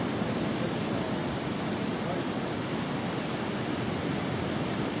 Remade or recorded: recorded